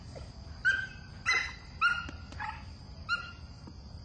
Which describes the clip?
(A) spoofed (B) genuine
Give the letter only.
B